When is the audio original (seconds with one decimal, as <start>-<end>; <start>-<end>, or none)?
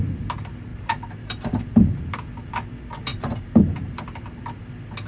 0.0-0.7; 2.0-3.1; 4.0-5.1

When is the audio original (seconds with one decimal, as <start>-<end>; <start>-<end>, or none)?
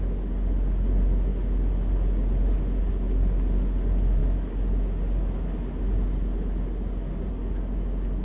0.0-8.2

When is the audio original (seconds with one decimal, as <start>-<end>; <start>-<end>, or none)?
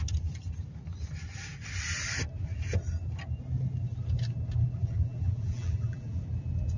0.0-4.8; 6.2-6.8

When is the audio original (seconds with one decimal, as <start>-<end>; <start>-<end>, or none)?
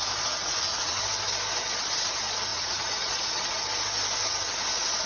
0.0-0.4; 1.0-2.5; 3.2-5.1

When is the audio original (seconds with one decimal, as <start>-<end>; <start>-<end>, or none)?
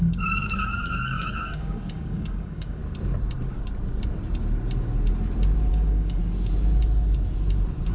2.8-5.7; 6.2-7.9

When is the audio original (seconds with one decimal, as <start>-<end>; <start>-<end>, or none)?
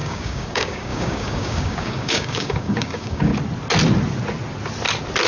3.3-5.3